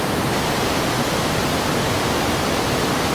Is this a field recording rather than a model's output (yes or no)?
yes